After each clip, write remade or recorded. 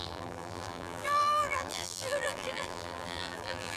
remade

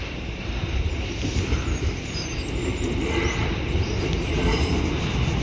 recorded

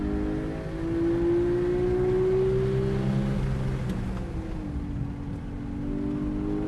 recorded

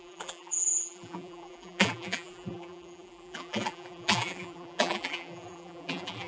remade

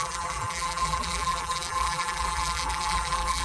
remade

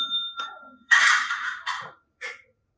remade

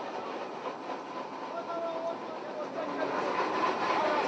recorded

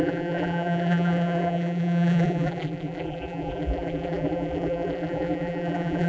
remade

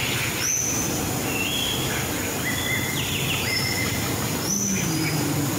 recorded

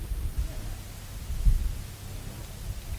recorded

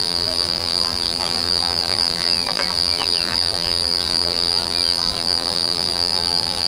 remade